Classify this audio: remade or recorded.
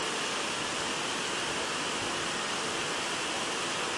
recorded